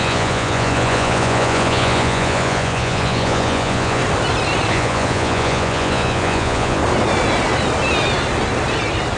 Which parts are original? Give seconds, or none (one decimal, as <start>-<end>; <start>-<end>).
4.0-4.7; 6.8-9.2